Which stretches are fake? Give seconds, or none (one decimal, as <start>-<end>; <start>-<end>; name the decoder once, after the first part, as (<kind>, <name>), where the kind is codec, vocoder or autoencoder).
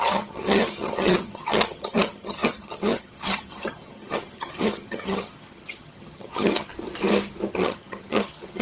0.0-6.7 (vocoder, HiFi-GAN); 7.5-8.6